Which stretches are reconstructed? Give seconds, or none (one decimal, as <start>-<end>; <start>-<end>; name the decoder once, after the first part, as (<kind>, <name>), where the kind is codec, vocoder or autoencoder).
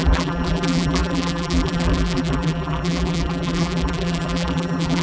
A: 0.0-5.0 (vocoder, BigVGAN v2)